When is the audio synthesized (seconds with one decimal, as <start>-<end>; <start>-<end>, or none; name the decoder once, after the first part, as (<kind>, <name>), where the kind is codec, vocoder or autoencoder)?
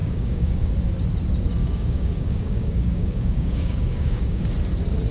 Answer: 0.0-0.7 (codec, DAC); 1.6-4.4